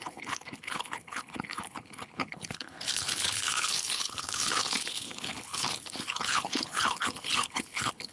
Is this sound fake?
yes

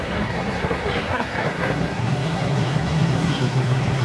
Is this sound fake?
yes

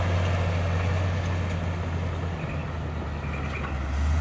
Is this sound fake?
no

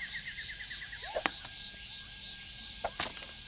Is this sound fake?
no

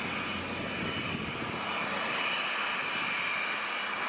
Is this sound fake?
no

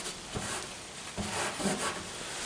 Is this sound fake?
no